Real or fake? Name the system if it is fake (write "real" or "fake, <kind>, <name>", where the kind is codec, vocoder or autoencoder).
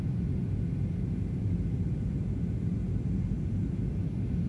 real